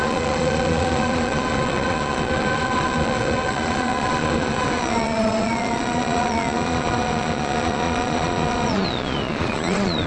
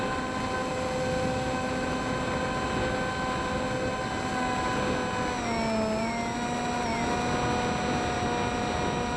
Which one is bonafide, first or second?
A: second